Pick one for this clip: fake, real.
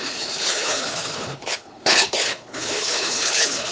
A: fake